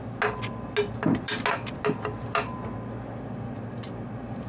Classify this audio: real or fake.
real